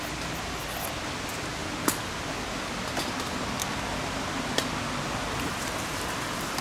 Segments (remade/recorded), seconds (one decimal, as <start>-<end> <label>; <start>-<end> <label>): 0.0-6.6 recorded